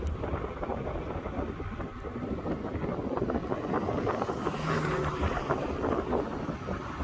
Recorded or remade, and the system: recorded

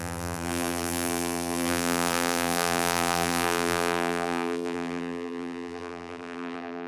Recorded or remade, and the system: remade, vocoder, BigVGAN v2